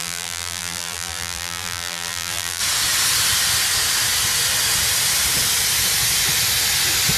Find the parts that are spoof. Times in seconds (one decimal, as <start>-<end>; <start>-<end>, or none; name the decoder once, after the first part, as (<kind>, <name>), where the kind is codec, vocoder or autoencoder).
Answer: 0.0-2.6 (vocoder, BigVGAN v2)